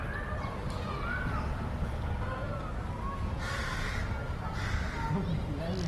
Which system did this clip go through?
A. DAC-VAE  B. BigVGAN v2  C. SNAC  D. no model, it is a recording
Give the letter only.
D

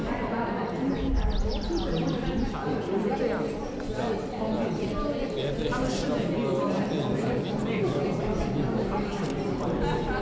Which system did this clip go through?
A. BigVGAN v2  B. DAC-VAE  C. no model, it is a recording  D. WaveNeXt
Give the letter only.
C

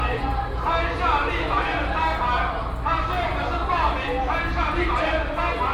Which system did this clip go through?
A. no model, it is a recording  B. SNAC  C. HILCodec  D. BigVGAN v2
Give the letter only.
A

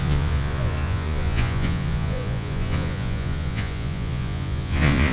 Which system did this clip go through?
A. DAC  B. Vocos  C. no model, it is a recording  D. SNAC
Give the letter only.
B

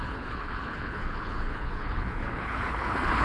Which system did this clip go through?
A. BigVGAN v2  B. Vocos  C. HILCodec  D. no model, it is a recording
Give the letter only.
C